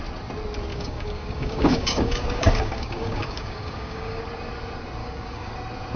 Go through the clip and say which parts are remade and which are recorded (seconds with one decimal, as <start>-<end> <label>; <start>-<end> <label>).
0.0-0.7 recorded; 0.7-4.2 remade; 4.2-5.0 recorded; 5.0-5.5 remade; 5.5-6.0 recorded